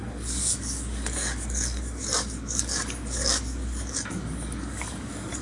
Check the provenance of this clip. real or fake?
fake